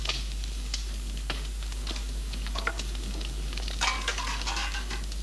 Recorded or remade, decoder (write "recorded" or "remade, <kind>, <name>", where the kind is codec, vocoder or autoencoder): remade, codec, DAC